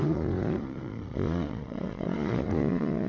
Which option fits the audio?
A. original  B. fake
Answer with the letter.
B